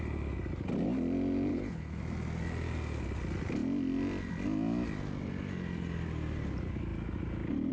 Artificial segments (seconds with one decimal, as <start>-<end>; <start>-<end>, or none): 1.5-2.0